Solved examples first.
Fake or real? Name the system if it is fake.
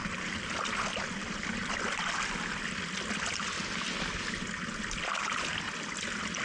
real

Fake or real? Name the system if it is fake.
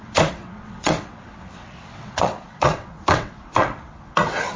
fake, vocoder, WaveNeXt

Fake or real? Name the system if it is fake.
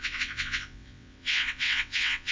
fake, vocoder, WaveNeXt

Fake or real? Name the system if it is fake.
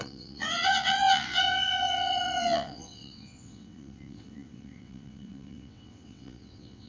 fake, vocoder, WaveNeXt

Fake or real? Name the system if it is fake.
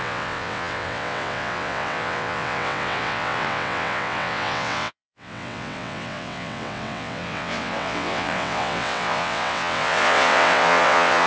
fake, vocoder, WaveNeXt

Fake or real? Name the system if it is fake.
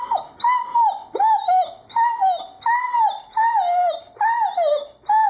real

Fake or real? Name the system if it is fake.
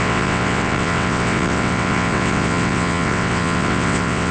fake, vocoder, WaveNeXt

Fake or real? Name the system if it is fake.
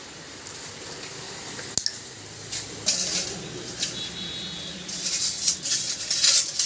real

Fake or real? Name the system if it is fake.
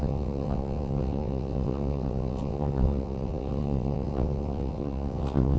fake, vocoder, WaveNeXt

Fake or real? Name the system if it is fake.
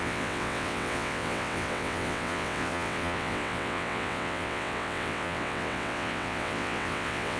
fake, vocoder, WaveNeXt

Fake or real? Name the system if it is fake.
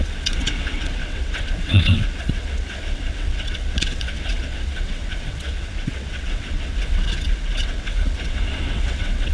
fake, vocoder, WaveNeXt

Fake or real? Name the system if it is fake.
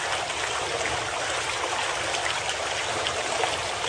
real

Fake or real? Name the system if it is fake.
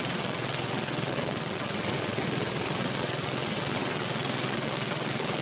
fake, vocoder, WaveNeXt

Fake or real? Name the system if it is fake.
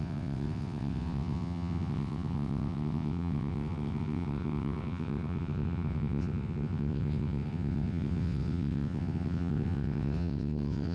fake, vocoder, WaveNeXt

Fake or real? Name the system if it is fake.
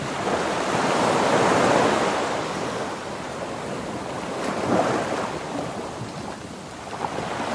real